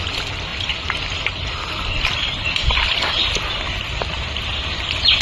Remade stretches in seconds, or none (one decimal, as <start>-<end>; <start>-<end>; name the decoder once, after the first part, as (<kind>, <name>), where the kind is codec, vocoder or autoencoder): 0.5-3.3 (vocoder, BigVGAN v2)